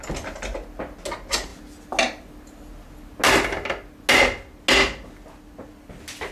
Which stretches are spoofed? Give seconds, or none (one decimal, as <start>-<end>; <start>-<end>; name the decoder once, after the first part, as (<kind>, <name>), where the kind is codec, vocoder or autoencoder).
none